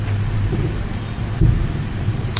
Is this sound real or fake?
fake